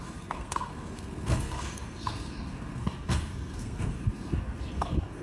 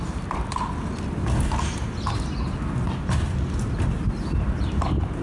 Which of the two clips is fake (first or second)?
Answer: first